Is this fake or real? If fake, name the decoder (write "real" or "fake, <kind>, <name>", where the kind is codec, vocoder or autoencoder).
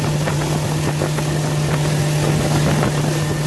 real